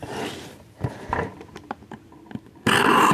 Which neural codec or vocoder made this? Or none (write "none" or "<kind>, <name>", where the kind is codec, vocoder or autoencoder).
none